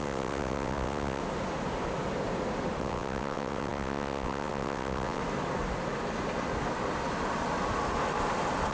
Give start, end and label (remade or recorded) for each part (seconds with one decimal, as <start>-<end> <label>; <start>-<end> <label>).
0.0-1.2 remade; 1.2-2.8 recorded; 2.8-5.2 remade; 5.2-8.7 recorded